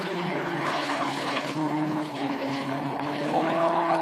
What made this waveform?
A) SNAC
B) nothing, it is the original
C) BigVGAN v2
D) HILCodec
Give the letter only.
D